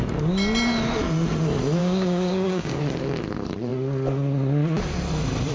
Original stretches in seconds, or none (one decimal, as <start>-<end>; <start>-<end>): 0.0-1.8; 2.8-5.5